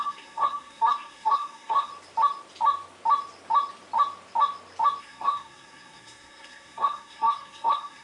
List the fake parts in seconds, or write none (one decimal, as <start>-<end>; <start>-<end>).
0.0-1.9; 5.0-8.0